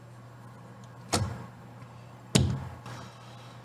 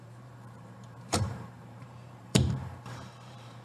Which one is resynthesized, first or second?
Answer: second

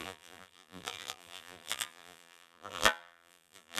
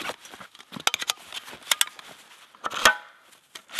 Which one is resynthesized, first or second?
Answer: first